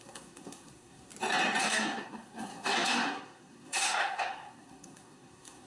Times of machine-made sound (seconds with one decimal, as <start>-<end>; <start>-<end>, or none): 0.0-1.1; 1.6-5.7